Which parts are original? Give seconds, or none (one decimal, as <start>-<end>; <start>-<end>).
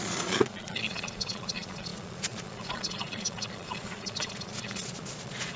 none